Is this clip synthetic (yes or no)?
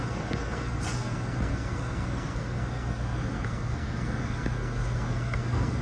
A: yes